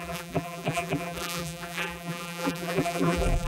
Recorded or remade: remade